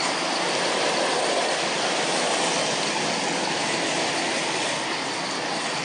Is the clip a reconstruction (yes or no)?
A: no